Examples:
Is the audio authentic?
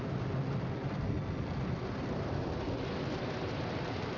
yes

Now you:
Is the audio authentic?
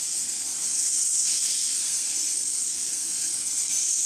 no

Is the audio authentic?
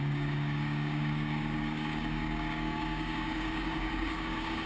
no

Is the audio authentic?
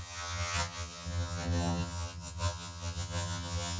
no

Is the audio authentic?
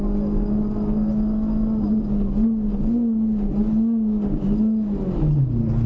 yes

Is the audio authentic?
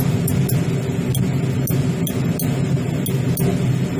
yes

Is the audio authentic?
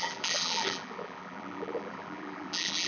no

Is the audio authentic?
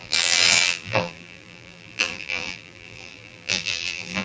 no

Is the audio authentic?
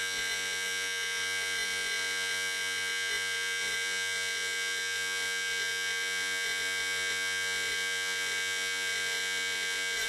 no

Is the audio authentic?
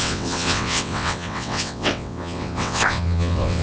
no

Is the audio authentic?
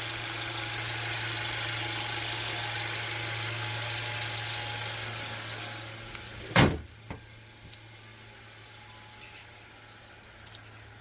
yes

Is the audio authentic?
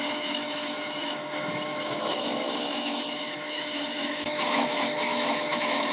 no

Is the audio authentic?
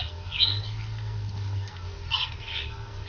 no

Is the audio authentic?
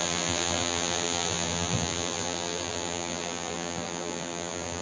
no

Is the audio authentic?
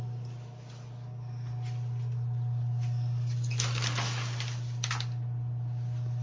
yes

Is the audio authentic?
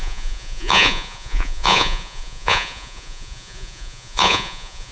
no